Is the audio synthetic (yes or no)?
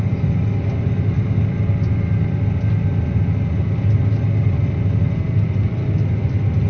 no